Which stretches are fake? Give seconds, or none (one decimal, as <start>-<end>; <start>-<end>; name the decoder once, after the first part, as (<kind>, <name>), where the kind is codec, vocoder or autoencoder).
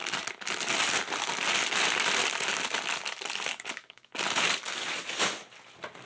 3.5-4.1 (codec, DAC)